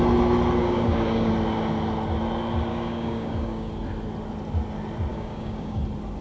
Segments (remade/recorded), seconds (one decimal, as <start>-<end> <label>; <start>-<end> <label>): 0.0-0.6 recorded; 0.6-1.3 remade; 1.3-2.7 recorded; 2.7-3.7 remade; 3.7-5.1 recorded; 5.1-5.8 remade; 5.8-6.2 recorded